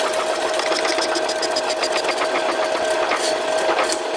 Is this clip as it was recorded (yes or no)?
yes